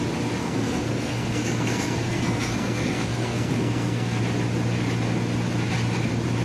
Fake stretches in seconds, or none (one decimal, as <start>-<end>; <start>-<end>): 0.4-4.2

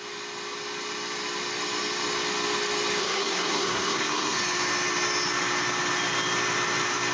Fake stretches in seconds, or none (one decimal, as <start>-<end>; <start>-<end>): 3.0-4.4

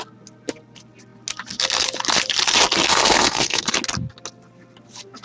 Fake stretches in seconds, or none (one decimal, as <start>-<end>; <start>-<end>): 2.9-3.7